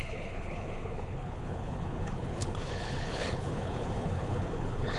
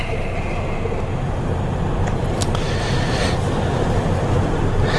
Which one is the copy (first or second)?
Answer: first